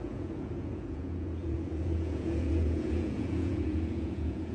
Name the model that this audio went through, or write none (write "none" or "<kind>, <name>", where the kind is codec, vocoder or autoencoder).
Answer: vocoder, Vocos